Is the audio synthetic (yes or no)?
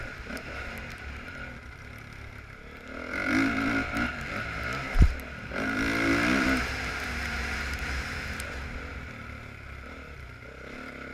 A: no